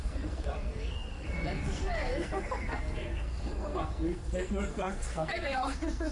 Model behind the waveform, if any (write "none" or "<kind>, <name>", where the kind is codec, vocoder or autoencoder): codec, SNAC